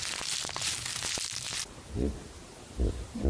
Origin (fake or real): real